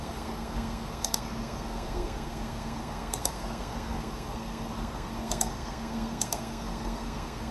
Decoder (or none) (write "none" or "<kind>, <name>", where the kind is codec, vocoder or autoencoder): codec, SNAC